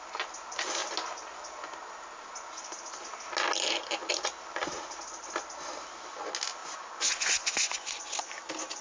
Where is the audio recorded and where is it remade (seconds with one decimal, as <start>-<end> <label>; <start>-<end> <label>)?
0.0-6.6 recorded; 6.6-8.3 remade; 8.3-8.8 recorded